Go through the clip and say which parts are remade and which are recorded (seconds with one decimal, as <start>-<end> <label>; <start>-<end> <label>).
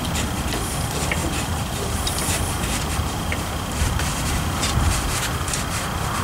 0.0-1.2 recorded; 1.2-4.9 remade; 4.9-6.2 recorded